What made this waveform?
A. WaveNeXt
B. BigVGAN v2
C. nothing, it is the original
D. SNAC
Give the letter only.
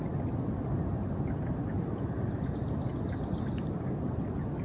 C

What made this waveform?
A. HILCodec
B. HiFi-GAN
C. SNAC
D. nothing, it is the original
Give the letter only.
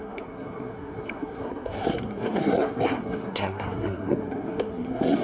C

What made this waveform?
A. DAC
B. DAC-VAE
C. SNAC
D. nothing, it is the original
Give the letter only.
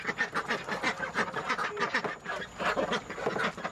D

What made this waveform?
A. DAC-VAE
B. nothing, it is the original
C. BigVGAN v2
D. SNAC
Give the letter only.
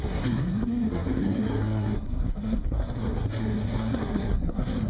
D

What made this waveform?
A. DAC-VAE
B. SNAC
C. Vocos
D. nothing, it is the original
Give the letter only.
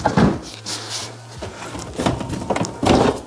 D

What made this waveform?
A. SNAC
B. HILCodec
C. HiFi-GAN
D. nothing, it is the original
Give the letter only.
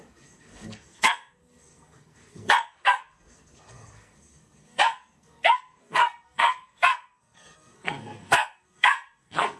A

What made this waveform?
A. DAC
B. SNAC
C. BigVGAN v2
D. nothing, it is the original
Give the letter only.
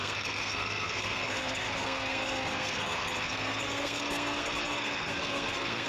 B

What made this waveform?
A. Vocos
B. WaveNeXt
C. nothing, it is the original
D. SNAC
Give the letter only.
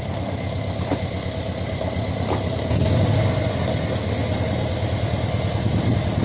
C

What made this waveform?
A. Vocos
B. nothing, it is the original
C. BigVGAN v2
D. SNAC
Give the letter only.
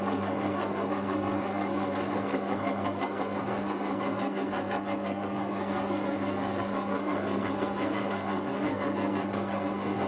D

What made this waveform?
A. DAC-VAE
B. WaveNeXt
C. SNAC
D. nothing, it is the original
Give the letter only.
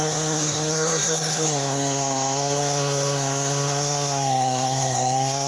C